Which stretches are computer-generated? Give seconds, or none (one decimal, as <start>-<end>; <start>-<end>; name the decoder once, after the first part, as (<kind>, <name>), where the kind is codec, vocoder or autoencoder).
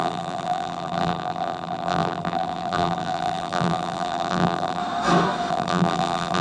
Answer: 0.0-4.8 (vocoder, BigVGAN v2); 5.5-6.4